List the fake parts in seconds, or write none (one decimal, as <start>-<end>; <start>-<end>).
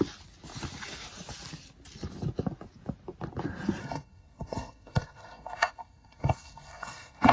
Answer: 3.8-7.3